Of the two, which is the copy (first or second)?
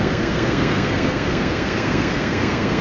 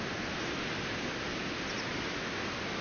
first